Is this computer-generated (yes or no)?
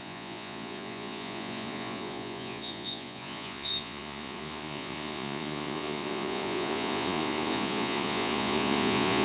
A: yes